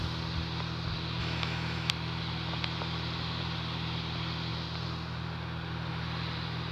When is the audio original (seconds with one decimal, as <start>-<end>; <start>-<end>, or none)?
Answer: 0.0-1.2; 1.9-6.7